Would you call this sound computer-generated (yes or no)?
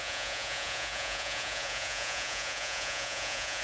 yes